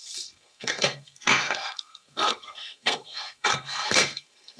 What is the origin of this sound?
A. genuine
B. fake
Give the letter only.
B